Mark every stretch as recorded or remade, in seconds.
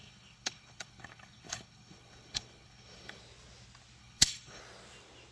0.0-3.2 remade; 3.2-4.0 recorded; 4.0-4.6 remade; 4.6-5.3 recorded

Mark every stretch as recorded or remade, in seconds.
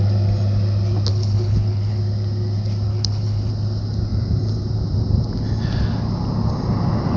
0.0-1.1 recorded; 1.1-2.0 remade; 2.0-2.9 recorded; 2.9-3.5 remade; 3.5-7.2 recorded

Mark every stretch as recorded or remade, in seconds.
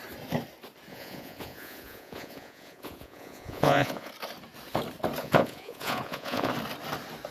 0.0-0.9 recorded; 0.9-4.1 remade; 4.1-5.2 recorded; 5.2-6.5 remade; 6.5-7.3 recorded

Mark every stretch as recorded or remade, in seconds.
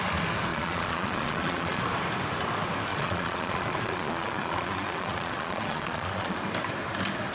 0.0-0.5 recorded; 0.5-1.8 remade; 1.8-2.9 recorded; 2.9-6.4 remade; 6.4-7.3 recorded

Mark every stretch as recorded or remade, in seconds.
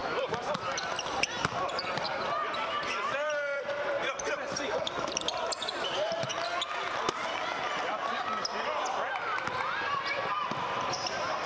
0.0-6.3 remade; 6.3-10.5 recorded; 10.5-11.5 remade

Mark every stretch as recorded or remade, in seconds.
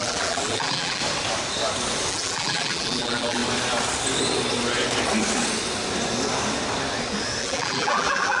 0.0-1.0 remade; 1.0-2.1 recorded; 2.1-3.4 remade; 3.4-7.4 recorded; 7.4-8.4 remade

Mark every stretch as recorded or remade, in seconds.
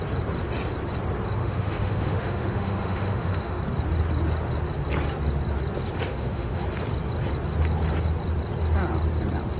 0.0-1.4 recorded; 1.4-3.6 remade; 3.6-6.1 recorded; 6.1-6.6 remade; 6.6-9.6 recorded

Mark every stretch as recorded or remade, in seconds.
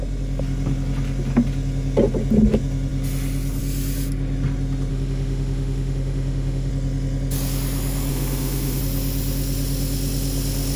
0.0-4.9 recorded; 4.9-6.7 remade; 6.7-8.1 recorded; 8.1-8.8 remade; 8.8-10.8 recorded